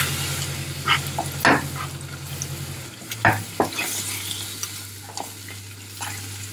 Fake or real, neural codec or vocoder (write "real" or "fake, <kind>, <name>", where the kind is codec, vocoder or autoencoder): real